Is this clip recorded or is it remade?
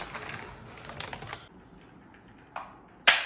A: recorded